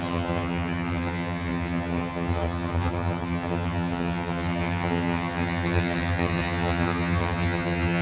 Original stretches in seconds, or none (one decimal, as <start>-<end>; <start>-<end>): none